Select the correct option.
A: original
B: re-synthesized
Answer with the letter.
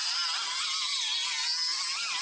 A